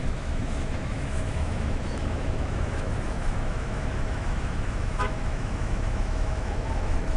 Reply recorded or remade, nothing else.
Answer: remade